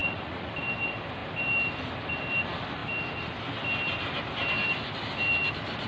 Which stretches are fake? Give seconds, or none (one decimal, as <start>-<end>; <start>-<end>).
0.0-0.5